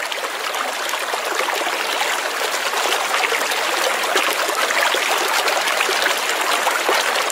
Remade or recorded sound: recorded